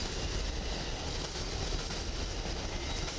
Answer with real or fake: real